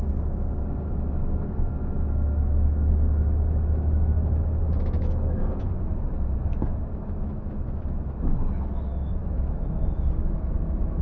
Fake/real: fake